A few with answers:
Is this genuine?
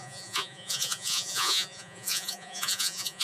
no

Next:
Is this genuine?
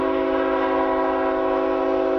yes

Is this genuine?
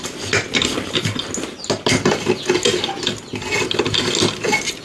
yes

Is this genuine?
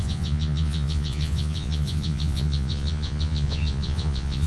no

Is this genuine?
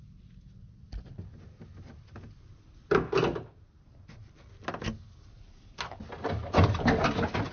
yes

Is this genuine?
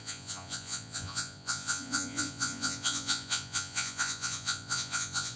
no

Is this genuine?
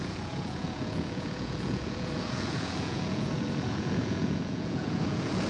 no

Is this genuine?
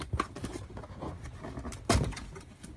yes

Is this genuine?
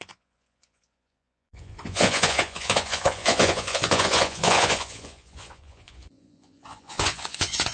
no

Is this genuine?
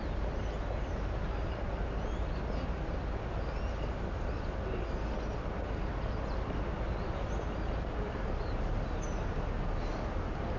yes